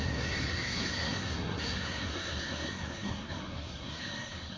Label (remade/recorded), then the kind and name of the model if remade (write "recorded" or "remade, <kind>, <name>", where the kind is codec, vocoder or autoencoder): remade, codec, SNAC